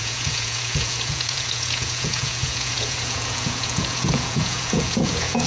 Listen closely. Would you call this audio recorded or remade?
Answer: remade